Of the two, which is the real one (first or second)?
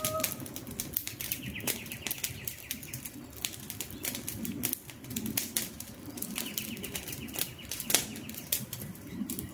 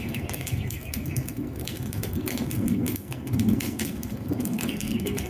first